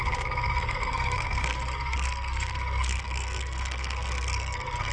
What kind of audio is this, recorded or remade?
remade